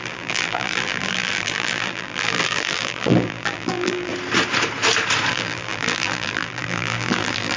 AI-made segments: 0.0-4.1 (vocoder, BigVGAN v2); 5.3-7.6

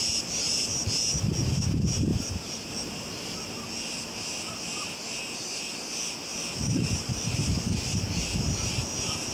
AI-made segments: 2.1-2.7 (vocoder, BigVGAN v2); 6.3-7.7

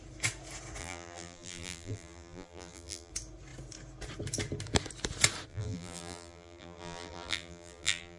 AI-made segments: 0.8-3.1 (vocoder, BigVGAN v2); 5.5-8.2

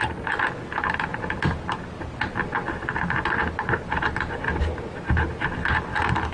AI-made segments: 1.1-2.4 (vocoder, BigVGAN v2)

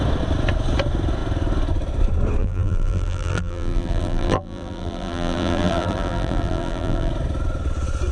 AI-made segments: 2.4-7.1 (vocoder, BigVGAN v2)

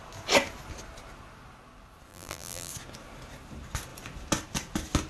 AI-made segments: 2.1-2.7 (vocoder, BigVGAN v2)

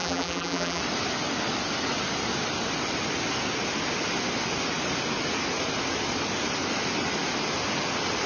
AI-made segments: 0.0-0.8 (vocoder, BigVGAN v2)